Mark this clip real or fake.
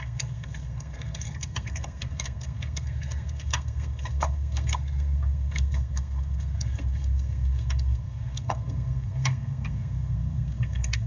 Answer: fake